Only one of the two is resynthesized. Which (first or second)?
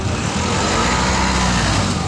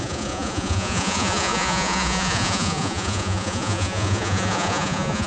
second